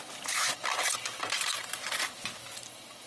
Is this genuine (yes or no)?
yes